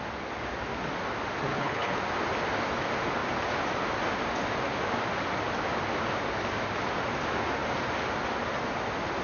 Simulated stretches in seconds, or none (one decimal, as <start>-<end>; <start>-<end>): 1.5-2.0